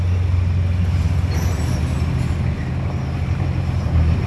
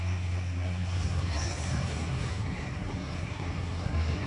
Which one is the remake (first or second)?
second